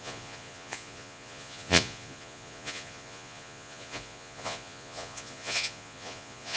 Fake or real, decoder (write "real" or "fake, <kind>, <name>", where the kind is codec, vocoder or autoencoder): fake, vocoder, Vocos